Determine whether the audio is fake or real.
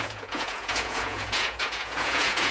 fake